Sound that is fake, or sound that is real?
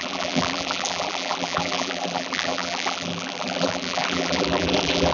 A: fake